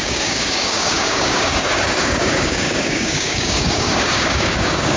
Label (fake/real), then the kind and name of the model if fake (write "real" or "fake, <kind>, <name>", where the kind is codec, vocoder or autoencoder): fake, codec, DAC